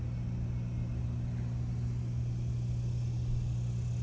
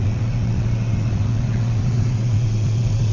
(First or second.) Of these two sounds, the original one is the first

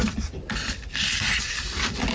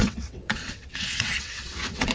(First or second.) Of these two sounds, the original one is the first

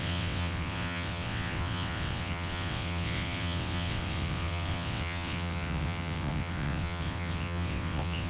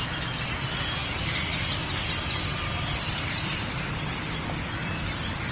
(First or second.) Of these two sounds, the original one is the second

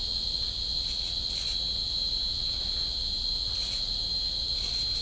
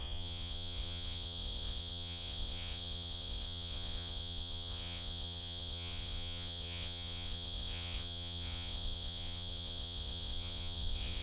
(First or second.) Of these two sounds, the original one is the first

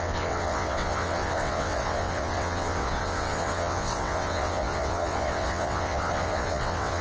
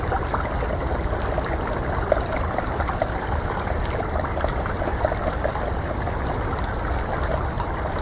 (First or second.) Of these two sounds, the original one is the second